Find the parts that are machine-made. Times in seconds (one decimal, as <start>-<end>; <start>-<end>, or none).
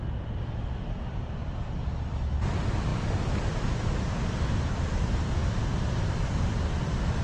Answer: none